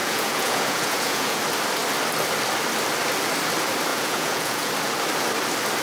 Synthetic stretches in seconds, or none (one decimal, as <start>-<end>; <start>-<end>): 0.0-1.4; 3.9-4.7